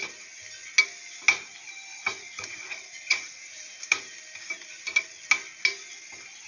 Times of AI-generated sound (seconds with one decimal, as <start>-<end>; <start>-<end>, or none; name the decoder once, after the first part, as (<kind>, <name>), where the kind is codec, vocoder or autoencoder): 1.9-3.8 (vocoder, Vocos)